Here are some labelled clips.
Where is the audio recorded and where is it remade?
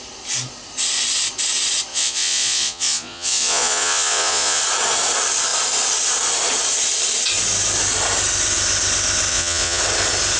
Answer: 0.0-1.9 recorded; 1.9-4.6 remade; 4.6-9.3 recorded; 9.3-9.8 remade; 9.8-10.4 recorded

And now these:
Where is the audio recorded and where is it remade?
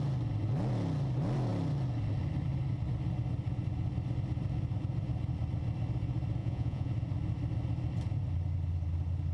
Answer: 0.0-6.4 recorded; 6.4-6.9 remade; 6.9-9.3 recorded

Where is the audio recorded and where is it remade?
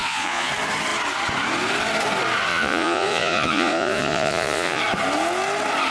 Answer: 0.0-0.5 remade; 0.5-2.5 recorded; 2.5-4.8 remade; 4.8-5.9 recorded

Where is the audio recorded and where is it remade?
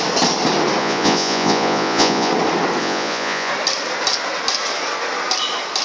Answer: 0.0-0.8 recorded; 0.8-2.3 remade; 2.3-2.8 recorded; 2.8-3.5 remade; 3.5-5.8 recorded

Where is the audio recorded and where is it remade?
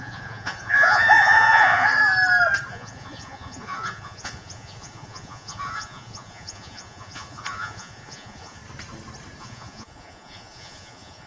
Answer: 0.0-1.9 remade; 1.9-2.7 recorded; 2.7-8.6 remade; 8.6-9.4 recorded; 9.4-11.3 remade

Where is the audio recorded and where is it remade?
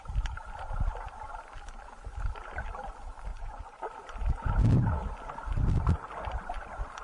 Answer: 0.0-3.3 recorded; 3.3-3.8 remade; 3.8-7.0 recorded